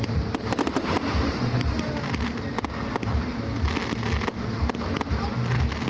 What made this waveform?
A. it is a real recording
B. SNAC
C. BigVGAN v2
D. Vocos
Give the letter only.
A